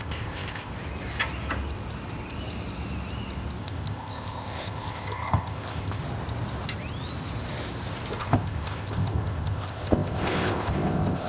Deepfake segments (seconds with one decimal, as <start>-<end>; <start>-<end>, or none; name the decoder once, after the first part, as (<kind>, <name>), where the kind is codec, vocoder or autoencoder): 0.0-0.7 (codec, ZipCodec); 3.6-6.0; 8.2-11.3